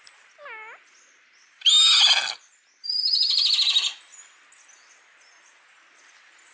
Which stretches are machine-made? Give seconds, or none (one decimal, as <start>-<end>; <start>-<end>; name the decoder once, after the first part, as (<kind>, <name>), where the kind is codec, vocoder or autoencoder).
none